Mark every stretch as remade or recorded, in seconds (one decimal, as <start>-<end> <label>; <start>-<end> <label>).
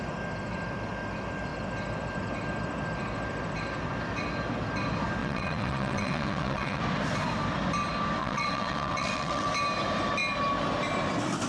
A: 0.0-5.2 recorded; 5.2-6.8 remade; 6.8-8.2 recorded; 8.2-9.5 remade; 9.5-11.5 recorded